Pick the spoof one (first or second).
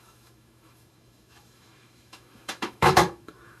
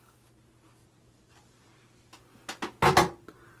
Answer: first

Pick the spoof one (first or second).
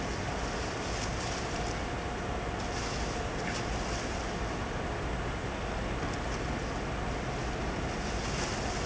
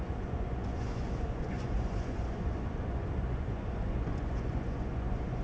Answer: second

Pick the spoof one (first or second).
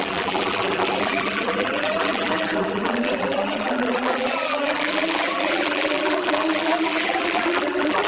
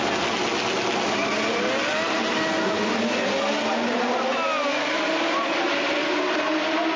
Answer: first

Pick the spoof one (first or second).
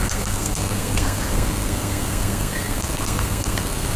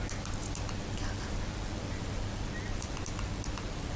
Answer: first